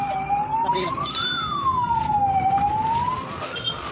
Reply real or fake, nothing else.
real